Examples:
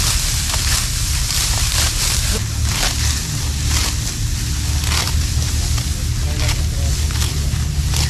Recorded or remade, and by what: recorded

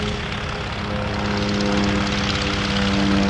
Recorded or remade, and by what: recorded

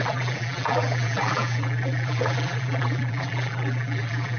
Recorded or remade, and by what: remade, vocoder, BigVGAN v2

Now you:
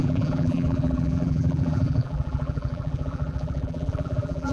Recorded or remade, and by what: remade, vocoder, BigVGAN v2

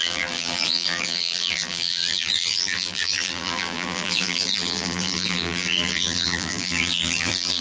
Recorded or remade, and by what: remade, vocoder, BigVGAN v2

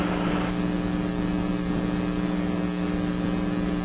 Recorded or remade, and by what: recorded